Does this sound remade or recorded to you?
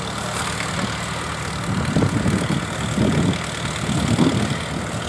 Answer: recorded